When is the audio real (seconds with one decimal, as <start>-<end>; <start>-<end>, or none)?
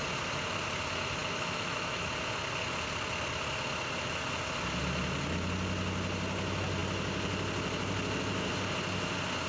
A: 0.0-1.2; 2.1-9.5